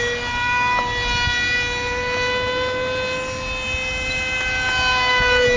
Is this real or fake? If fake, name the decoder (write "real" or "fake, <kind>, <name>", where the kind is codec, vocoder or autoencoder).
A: real